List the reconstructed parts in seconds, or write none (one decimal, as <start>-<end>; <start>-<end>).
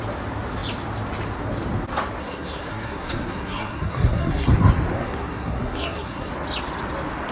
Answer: 2.2-4.5; 5.0-6.3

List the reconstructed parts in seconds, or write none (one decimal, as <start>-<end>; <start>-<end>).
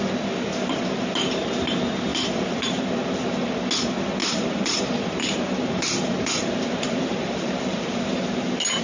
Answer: 2.1-2.8; 4.2-8.0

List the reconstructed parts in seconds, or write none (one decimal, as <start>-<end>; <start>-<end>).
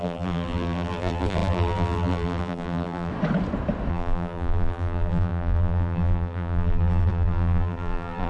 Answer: 0.0-3.1; 3.9-8.3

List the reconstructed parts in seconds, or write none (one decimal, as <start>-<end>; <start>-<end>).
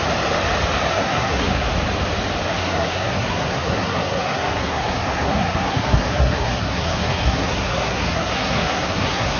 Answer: 0.9-1.7; 2.5-9.4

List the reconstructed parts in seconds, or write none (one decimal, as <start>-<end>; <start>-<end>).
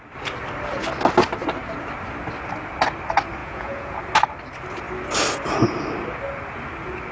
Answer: 3.4-4.0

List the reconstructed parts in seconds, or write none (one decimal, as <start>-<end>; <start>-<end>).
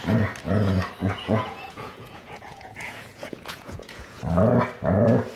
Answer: 1.0-4.2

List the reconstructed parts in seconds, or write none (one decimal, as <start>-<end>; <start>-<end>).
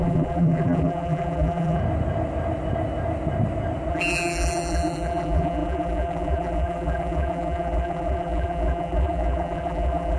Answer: 0.0-1.8; 3.9-10.2